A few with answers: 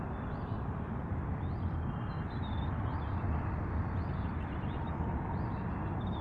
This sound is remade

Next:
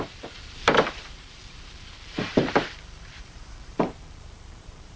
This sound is remade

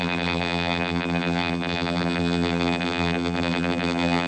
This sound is remade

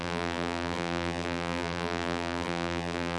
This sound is remade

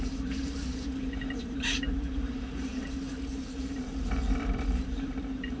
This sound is remade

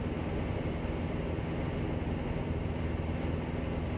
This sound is recorded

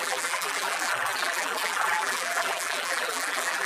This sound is remade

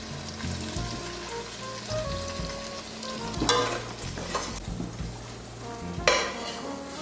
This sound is recorded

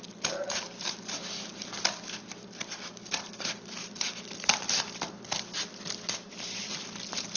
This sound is remade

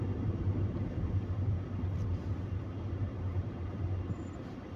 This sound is remade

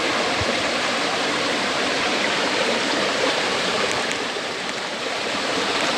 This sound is remade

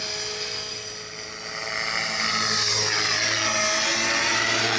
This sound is recorded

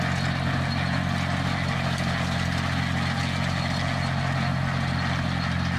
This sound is recorded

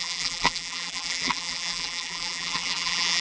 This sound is remade